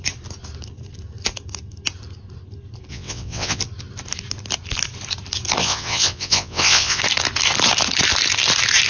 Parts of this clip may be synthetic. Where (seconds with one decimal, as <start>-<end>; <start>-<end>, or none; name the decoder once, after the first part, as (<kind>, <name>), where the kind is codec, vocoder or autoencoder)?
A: 2.9-3.6 (vocoder, WaveNeXt); 5.6-7.0